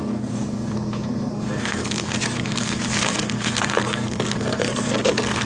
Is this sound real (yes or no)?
no